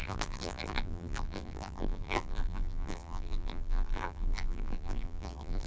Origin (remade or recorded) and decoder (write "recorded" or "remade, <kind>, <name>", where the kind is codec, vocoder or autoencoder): remade, vocoder, BigVGAN v2